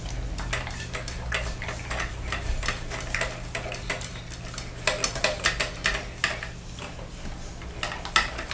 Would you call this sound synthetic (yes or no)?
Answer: no